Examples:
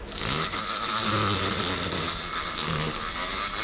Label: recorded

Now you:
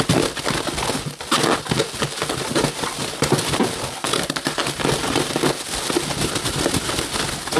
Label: recorded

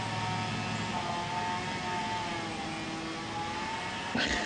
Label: recorded